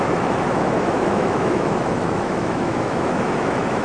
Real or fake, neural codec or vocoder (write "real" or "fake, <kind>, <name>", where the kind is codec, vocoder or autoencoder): fake, autoencoder, DAC-VAE